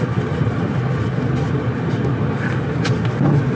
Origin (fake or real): real